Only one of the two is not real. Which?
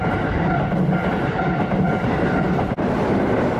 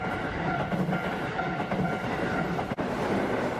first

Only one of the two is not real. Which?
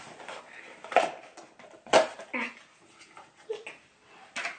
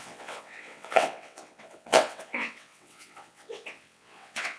second